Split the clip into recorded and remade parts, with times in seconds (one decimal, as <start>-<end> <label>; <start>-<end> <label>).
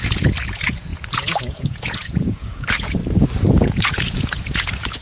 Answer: 0.0-3.0 remade; 3.0-3.6 recorded; 3.6-5.0 remade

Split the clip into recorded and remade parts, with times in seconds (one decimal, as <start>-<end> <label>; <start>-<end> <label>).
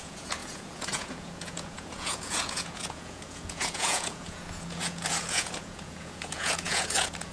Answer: 0.0-7.3 remade